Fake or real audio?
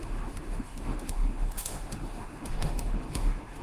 fake